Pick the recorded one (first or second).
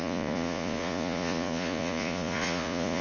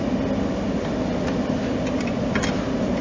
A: second